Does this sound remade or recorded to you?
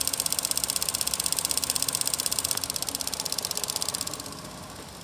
recorded